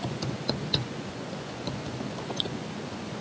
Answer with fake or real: fake